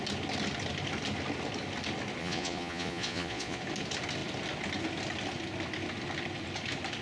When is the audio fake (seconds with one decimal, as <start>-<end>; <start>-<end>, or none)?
2.2-3.6